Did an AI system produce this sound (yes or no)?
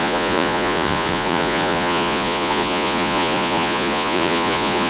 yes